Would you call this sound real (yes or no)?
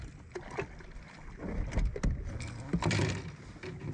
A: yes